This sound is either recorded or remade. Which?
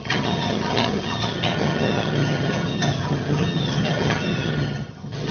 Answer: remade